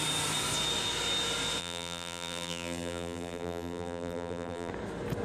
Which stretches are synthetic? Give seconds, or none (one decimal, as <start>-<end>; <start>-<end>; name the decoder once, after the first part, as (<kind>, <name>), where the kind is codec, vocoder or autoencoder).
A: 1.6-4.7 (vocoder, BigVGAN v2)